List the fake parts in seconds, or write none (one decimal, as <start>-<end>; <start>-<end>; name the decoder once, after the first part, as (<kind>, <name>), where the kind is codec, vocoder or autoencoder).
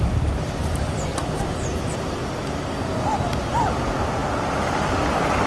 0.0-1.1 (vocoder, BigVGAN v2); 1.8-2.2; 3.8-4.2; 5.1-5.5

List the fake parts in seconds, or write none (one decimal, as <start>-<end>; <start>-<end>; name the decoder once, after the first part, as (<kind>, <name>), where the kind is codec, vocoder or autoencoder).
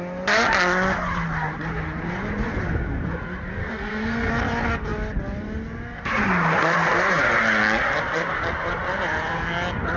3.6-4.3 (codec, SNAC)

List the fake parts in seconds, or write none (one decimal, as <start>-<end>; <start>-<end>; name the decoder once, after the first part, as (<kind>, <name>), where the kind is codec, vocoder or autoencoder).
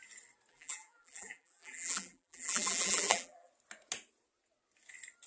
0.5-3.5 (vocoder, BigVGAN v2)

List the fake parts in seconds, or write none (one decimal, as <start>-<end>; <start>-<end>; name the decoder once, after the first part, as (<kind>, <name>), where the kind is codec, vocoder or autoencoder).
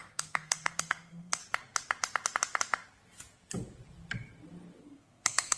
0.0-1.4 (codec, SNAC); 4.8-5.6